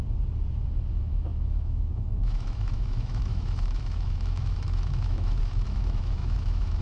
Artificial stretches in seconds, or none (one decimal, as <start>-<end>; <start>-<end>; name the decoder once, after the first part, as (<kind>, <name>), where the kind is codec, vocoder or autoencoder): 0.9-6.8 (autoencoder, DAC-VAE)